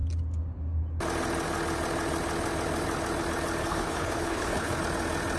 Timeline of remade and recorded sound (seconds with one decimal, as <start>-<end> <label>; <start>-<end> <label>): 0.0-3.6 recorded; 3.6-4.8 remade; 4.8-5.4 recorded